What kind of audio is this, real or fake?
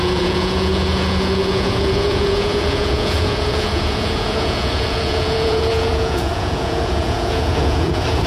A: fake